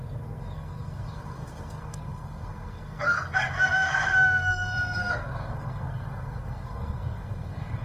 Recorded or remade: remade